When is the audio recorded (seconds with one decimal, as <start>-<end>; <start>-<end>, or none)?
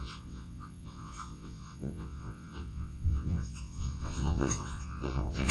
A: none